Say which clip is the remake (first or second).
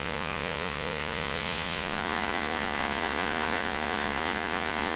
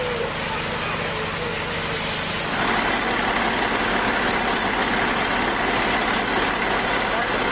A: first